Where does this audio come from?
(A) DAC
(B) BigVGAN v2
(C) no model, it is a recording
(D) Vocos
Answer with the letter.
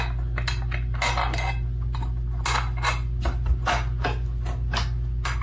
C